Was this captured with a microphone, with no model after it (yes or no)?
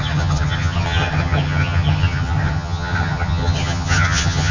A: no